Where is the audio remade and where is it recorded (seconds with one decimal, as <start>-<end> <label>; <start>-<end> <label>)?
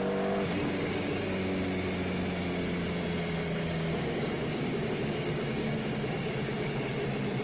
0.0-0.6 recorded; 0.6-1.2 remade; 1.2-3.4 recorded; 3.4-6.7 remade; 6.7-7.4 recorded